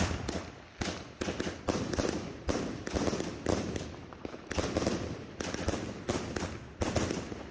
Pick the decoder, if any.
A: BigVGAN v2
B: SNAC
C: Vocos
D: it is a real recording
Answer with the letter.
D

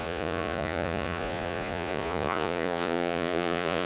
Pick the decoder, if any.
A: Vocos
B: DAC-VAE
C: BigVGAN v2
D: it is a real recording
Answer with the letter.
A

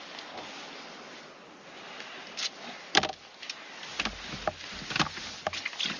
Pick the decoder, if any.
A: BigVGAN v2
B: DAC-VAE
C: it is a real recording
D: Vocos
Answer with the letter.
C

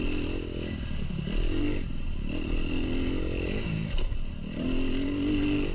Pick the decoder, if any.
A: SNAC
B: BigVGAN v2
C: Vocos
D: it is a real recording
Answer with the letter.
D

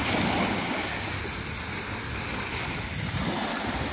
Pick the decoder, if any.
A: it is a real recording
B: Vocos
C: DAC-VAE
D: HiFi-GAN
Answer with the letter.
A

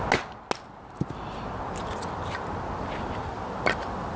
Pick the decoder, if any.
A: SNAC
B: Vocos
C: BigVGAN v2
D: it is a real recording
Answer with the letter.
D